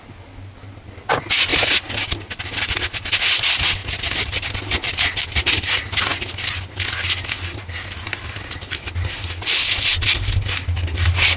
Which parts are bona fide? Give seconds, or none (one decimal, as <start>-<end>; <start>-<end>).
0.0-11.4